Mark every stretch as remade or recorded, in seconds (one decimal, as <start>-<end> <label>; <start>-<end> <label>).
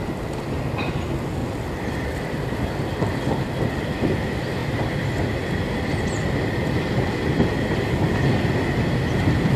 0.0-1.4 recorded; 1.4-3.7 remade; 3.7-9.6 recorded